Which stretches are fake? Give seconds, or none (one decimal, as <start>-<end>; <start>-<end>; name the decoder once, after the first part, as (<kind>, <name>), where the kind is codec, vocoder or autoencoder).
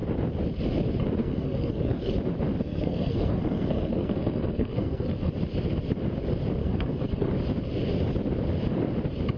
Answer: 1.2-2.1 (codec, SNAC); 2.6-5.3; 6.6-7.3